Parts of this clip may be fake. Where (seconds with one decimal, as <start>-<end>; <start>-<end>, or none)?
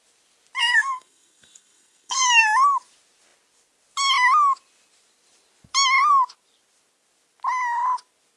0.6-2.3